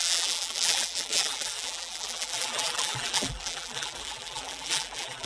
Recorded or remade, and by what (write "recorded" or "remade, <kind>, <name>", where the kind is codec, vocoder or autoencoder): remade, vocoder, BigVGAN v2